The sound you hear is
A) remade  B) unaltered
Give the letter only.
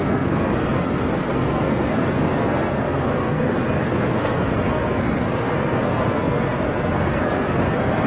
A